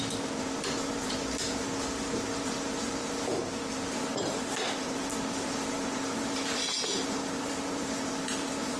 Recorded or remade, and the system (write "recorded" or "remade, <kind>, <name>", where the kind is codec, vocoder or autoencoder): remade, vocoder, BigVGAN v2